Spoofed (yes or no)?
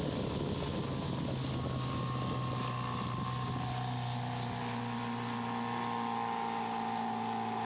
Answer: no